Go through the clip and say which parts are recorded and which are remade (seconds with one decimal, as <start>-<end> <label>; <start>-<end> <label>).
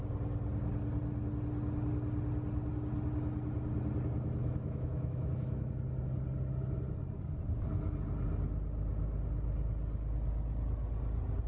0.0-4.4 recorded; 4.4-5.7 remade; 5.7-11.5 recorded